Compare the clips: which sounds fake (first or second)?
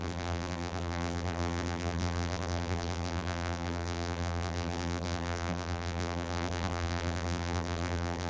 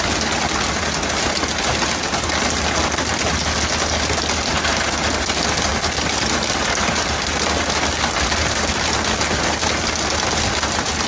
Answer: first